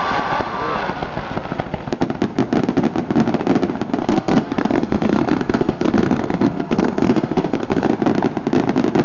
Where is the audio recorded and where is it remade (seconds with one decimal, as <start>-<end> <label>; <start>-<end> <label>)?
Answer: 0.0-4.0 recorded; 4.0-7.9 remade; 7.9-9.0 recorded